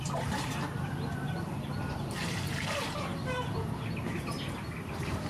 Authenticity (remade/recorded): recorded